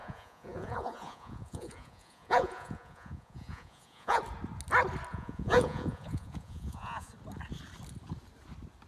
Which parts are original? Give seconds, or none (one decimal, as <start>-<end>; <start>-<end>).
4.2-5.1; 7.1-8.9